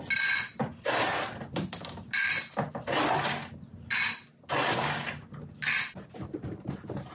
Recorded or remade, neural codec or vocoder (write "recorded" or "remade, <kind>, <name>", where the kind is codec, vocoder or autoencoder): recorded